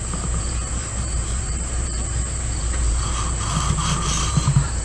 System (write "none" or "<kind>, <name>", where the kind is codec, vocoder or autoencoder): vocoder, BigVGAN v2